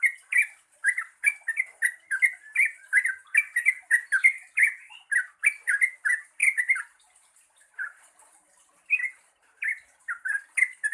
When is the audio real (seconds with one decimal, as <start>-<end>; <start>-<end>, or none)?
0.0-3.6; 4.6-6.4; 8.6-10.9